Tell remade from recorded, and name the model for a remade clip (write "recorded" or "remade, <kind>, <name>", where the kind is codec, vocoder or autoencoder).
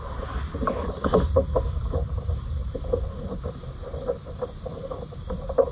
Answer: recorded